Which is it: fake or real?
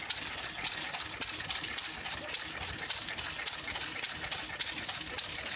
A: real